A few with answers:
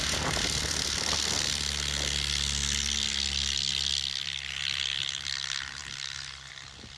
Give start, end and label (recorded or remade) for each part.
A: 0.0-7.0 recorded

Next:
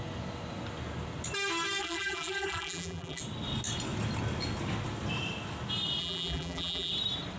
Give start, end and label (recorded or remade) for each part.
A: 0.0-1.8 recorded; 1.8-3.2 remade; 3.2-6.0 recorded; 6.0-6.9 remade; 6.9-7.4 recorded

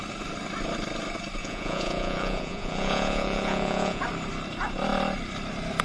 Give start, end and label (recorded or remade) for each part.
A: 0.0-1.4 recorded; 1.4-4.0 remade; 4.0-5.8 recorded

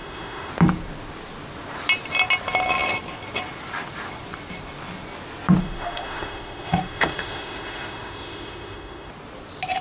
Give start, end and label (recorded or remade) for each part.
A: 0.0-0.5 remade; 0.5-5.6 recorded; 5.6-9.1 remade; 9.1-9.8 recorded

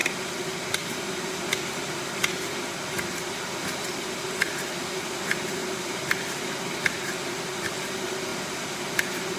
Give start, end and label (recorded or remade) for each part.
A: 0.0-5.6 recorded; 5.6-6.7 remade; 6.7-8.3 recorded; 8.3-8.9 remade; 8.9-9.4 recorded

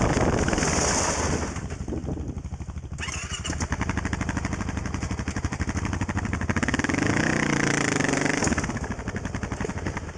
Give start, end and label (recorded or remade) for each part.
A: 0.0-10.2 recorded